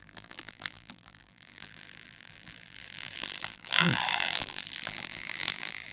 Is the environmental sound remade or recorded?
remade